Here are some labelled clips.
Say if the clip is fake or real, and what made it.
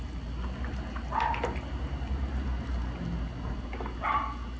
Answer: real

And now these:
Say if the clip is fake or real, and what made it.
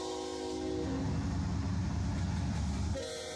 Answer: real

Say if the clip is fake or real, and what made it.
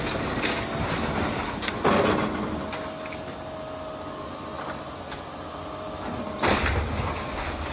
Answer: real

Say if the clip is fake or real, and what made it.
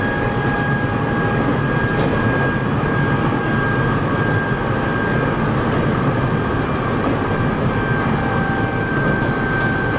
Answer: real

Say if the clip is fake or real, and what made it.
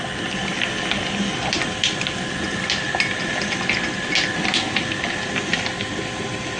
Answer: real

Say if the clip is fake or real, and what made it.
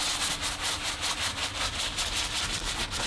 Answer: real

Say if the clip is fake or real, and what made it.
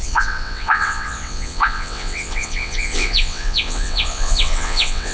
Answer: fake, vocoder, WaveNeXt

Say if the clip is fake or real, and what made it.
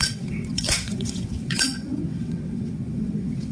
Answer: fake, vocoder, WaveNeXt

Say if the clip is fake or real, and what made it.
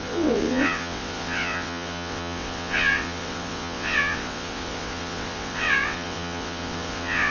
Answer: fake, vocoder, WaveNeXt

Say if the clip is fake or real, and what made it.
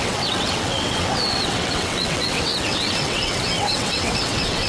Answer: fake, vocoder, WaveNeXt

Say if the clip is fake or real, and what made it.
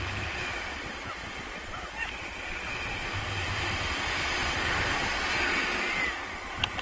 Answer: real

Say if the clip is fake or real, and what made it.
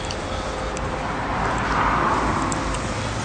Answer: real